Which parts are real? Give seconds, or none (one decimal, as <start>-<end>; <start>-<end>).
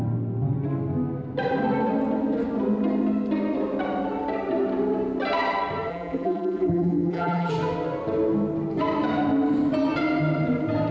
0.0-5.9; 7.5-10.9